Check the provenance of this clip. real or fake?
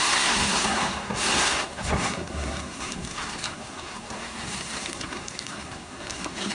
fake